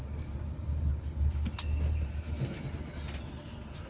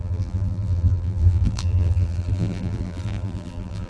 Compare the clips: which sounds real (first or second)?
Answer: first